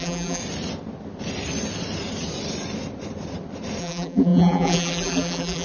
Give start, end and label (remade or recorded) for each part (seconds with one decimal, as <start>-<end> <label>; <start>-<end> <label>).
0.0-0.4 remade; 0.4-3.8 recorded; 3.8-5.6 remade